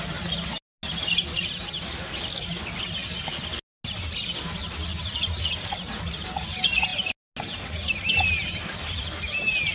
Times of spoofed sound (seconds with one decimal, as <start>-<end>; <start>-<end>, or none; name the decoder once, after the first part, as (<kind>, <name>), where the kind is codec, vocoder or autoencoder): none